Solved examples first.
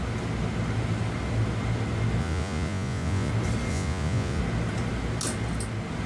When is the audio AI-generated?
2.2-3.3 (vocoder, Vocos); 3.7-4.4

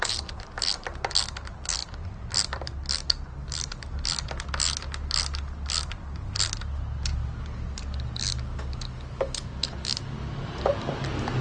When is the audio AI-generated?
none

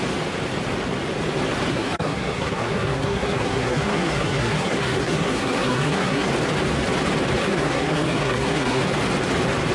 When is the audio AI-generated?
1.7-6.3 (codec, SNAC); 7.4-8.8

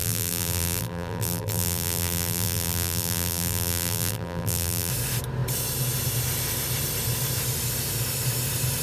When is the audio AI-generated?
0.0-4.9 (vocoder, BigVGAN v2)

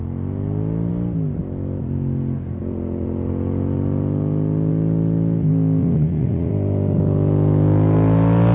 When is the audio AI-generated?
5.8-6.5 (vocoder, Vocos)

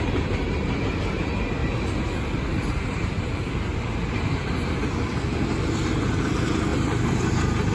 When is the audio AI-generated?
0.0-1.6 (vocoder, BigVGAN v2); 2.7-4.6; 6.2-7.7